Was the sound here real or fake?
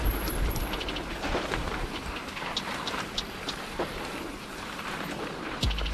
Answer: fake